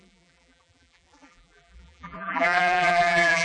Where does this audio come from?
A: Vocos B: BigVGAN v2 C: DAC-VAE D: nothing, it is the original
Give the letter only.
B